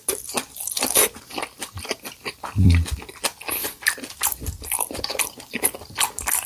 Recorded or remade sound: recorded